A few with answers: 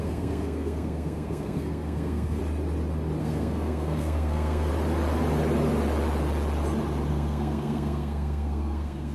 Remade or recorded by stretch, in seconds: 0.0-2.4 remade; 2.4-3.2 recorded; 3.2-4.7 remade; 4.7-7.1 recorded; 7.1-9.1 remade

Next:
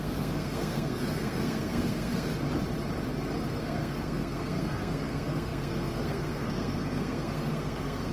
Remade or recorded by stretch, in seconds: 0.0-2.3 remade; 2.3-3.6 recorded; 3.6-8.1 remade

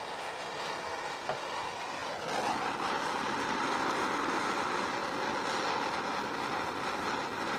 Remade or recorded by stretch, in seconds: 0.0-7.6 recorded

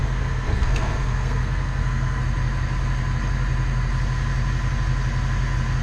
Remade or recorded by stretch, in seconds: 0.0-2.2 remade; 2.2-5.8 recorded

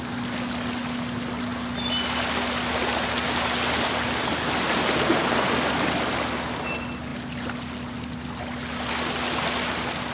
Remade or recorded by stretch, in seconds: 0.0-10.1 recorded

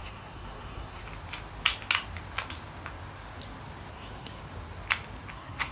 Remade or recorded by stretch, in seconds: 0.0-1.0 remade; 1.0-3.9 recorded; 3.9-4.4 remade; 4.4-5.3 recorded; 5.3-5.7 remade